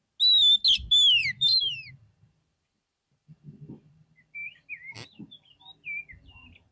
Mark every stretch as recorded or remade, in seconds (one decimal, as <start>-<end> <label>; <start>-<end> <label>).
0.0-1.2 recorded; 1.2-5.2 remade; 5.2-6.7 recorded